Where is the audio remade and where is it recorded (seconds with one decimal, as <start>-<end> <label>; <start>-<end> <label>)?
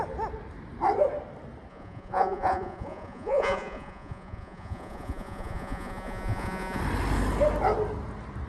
0.0-1.7 recorded; 1.7-6.8 remade; 6.8-8.5 recorded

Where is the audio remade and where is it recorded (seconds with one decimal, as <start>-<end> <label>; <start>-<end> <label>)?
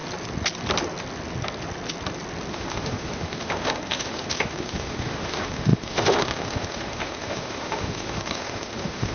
0.0-2.5 recorded; 2.5-9.1 remade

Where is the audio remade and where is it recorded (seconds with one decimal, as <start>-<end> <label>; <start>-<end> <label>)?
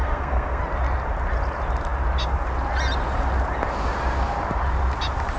0.0-0.6 remade; 0.6-5.4 recorded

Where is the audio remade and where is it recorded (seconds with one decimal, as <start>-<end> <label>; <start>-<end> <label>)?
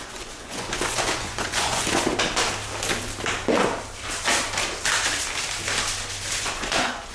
0.0-2.1 remade; 2.1-6.4 recorded; 6.4-7.1 remade